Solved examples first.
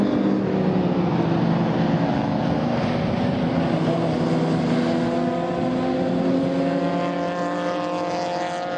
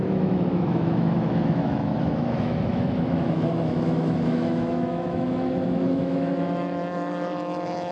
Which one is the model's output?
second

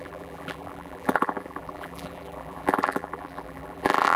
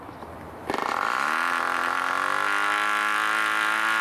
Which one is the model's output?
first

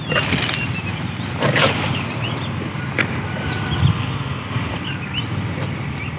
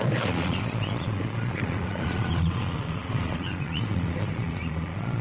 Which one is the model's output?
second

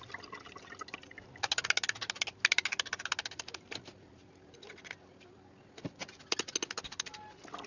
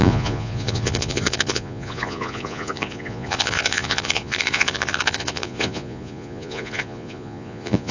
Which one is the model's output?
second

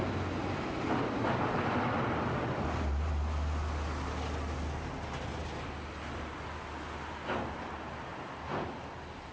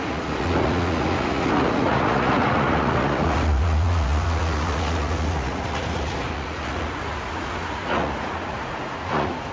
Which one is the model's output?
second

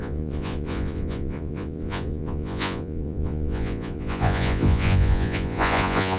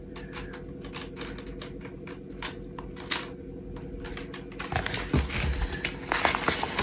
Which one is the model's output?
first